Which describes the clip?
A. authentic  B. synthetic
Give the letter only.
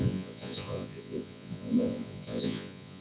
B